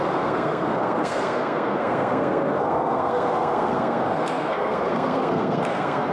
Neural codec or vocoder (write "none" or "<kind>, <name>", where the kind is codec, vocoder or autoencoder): codec, SNAC